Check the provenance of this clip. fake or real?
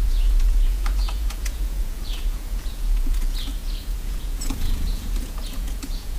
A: fake